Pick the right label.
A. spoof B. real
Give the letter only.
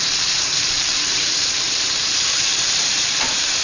A